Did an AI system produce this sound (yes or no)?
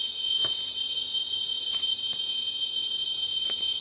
yes